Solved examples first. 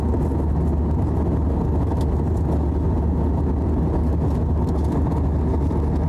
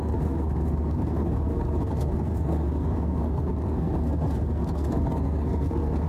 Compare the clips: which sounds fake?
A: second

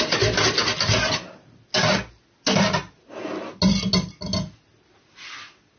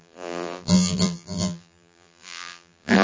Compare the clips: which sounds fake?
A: second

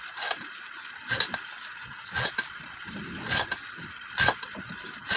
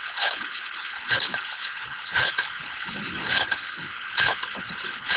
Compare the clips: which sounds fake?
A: second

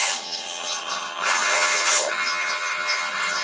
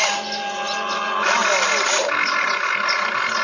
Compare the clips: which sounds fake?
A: first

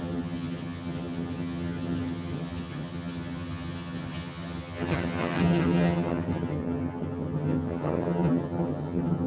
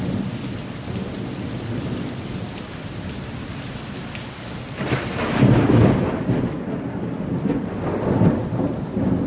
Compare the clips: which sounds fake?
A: first